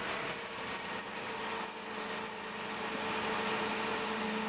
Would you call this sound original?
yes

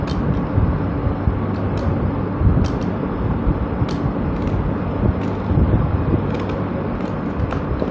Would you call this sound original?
yes